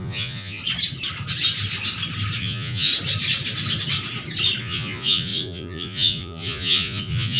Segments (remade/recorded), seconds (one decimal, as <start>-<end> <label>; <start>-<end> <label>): 0.0-0.6 remade; 0.6-2.4 recorded; 2.4-2.9 remade; 2.9-4.6 recorded; 4.6-7.4 remade